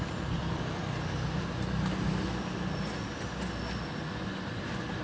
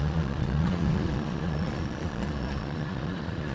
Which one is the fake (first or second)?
second